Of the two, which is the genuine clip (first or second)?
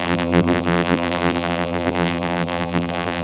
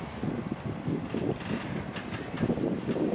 second